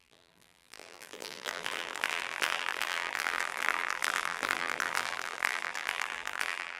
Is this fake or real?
fake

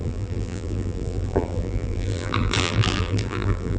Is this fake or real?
fake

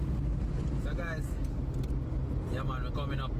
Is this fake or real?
real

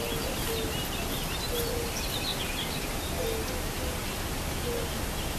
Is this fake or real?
real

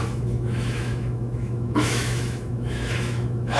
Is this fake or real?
fake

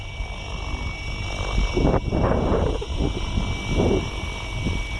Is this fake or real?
real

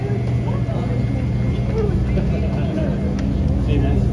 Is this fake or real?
real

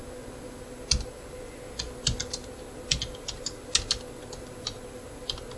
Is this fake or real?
real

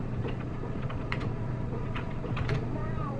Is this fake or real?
fake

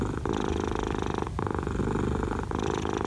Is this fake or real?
real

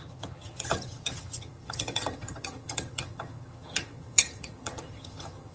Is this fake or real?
fake